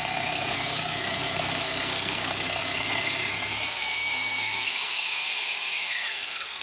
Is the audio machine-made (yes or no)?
yes